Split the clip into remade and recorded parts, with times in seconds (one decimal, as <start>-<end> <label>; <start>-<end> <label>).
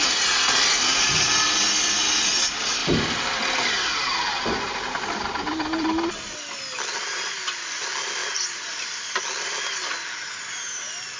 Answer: 0.0-2.8 recorded; 2.8-6.1 remade; 6.1-8.2 recorded; 8.2-9.2 remade; 9.2-11.2 recorded